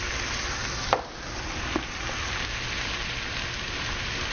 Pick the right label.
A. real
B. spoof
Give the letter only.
A